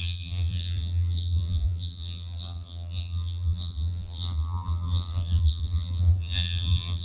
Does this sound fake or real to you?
fake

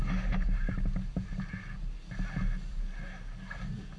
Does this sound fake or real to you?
real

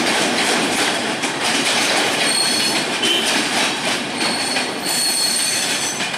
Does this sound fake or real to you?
fake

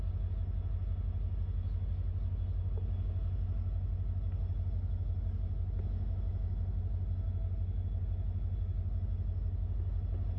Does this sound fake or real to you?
real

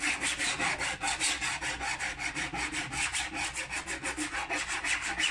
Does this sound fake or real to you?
real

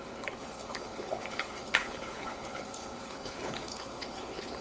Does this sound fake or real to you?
fake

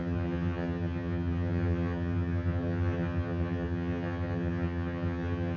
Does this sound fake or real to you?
fake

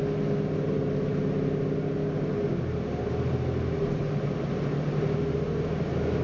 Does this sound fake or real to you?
real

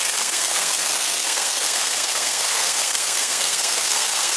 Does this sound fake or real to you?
fake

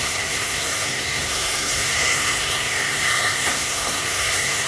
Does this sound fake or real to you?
fake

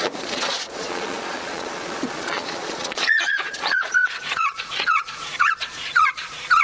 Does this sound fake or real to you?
fake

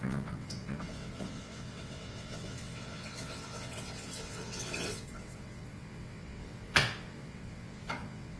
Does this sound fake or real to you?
fake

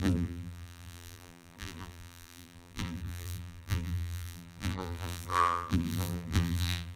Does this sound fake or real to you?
fake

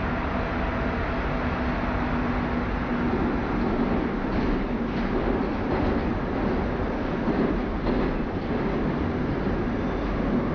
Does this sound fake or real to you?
real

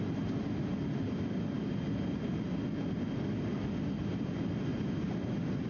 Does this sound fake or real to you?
real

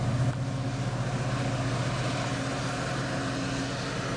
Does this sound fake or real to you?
real